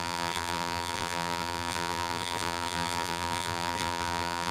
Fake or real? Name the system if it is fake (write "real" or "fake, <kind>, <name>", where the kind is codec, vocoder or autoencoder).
fake, vocoder, BigVGAN v2